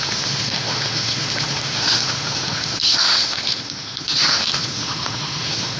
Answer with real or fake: fake